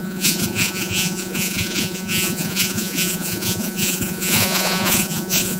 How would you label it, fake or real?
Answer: fake